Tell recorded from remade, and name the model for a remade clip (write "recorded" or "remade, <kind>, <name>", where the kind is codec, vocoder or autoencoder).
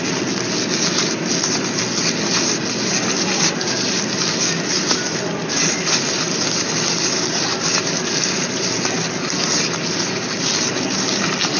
recorded